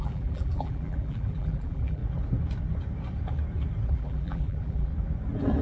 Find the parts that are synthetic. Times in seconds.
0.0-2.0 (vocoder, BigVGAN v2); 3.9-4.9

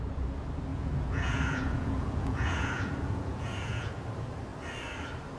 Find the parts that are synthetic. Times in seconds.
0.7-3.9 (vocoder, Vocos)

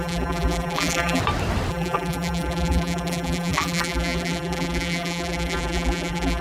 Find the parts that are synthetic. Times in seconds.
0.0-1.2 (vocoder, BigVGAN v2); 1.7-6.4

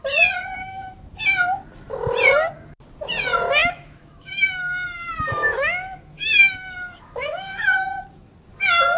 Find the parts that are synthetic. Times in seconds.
0.6-1.2 (autoencoder, DAC-VAE); 3.6-8.3

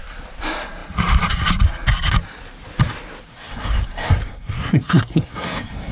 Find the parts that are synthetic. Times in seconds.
3.3-5.9 (codec, SNAC)

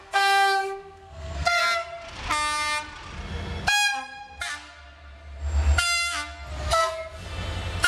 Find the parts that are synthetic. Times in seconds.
0.0-1.6 (codec, SNAC)

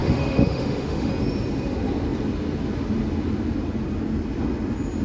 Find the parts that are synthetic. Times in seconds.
0.0-1.1 (autoencoder, DAC-VAE)

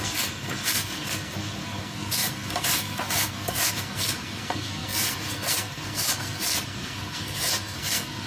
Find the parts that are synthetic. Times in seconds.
0.0-8.3 (codec, SNAC)